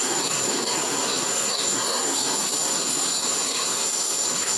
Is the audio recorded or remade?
remade